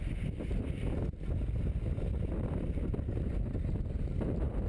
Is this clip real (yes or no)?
yes